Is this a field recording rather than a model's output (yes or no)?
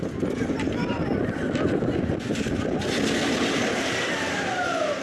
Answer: yes